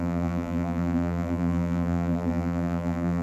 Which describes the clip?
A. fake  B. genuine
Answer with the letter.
A